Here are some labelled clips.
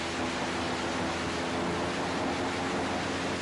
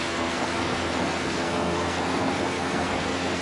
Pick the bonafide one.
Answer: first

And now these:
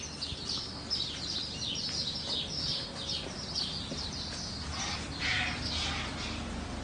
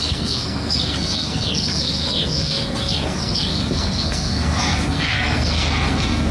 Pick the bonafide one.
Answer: first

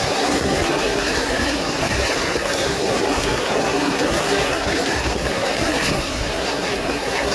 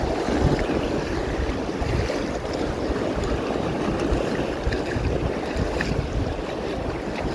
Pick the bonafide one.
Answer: second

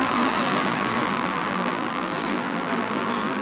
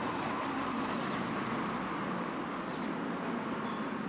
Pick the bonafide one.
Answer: second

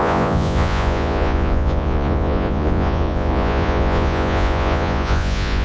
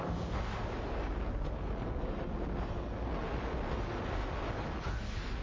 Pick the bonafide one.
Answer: second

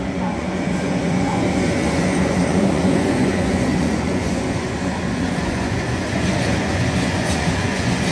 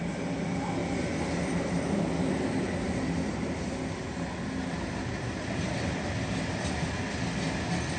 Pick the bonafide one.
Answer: second